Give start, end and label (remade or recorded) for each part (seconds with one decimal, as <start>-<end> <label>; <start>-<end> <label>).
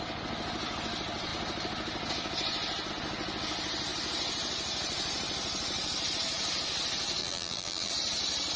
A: 0.0-7.2 recorded; 7.2-7.9 remade; 7.9-8.6 recorded